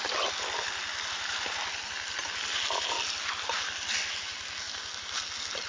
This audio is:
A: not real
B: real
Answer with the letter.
B